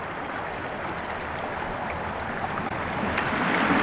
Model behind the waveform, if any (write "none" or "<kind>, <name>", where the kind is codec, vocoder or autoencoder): none